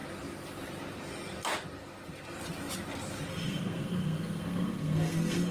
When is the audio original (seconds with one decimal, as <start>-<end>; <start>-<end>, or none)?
0.0-3.3